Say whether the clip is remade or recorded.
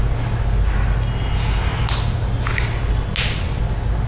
recorded